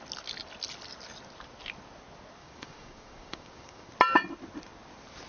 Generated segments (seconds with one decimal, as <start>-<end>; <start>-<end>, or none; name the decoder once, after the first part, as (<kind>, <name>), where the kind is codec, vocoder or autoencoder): 2.4-3.9 (codec, DAC)